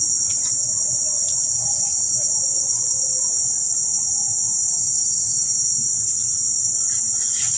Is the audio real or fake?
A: real